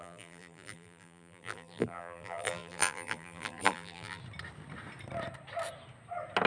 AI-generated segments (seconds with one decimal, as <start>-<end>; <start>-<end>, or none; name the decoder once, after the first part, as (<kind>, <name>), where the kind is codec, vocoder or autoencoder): 0.0-4.2 (vocoder, BigVGAN v2)

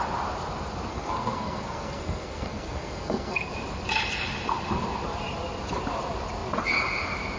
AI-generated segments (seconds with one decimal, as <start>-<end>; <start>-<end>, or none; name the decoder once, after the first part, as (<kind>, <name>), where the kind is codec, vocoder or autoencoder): 0.9-3.5 (codec, SNAC)

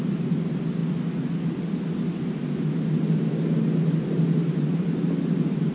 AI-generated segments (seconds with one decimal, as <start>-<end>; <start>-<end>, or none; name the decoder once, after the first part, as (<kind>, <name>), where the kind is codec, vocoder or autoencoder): none

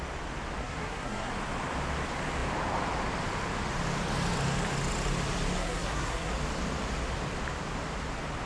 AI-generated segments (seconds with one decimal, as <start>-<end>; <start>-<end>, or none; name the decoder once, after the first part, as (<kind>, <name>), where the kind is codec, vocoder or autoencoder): 0.6-1.3 (codec, SNAC); 5.6-6.3